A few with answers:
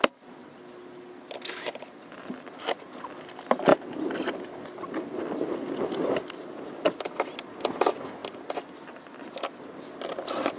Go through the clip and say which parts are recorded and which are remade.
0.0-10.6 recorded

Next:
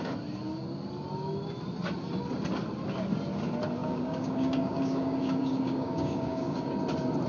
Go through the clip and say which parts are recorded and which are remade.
0.0-3.8 recorded; 3.8-6.7 remade; 6.7-7.3 recorded

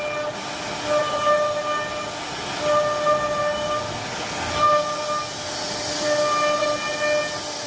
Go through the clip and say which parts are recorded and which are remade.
0.0-3.4 recorded; 3.4-4.7 remade; 4.7-7.7 recorded

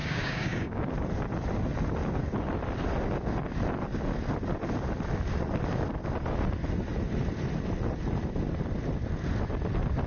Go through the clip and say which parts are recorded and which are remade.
0.0-0.8 remade; 0.8-10.1 recorded

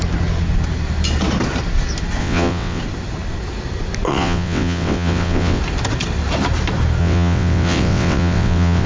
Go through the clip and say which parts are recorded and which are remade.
0.0-2.2 recorded; 2.2-2.8 remade; 2.8-4.1 recorded; 4.1-5.6 remade; 5.6-7.0 recorded; 7.0-8.9 remade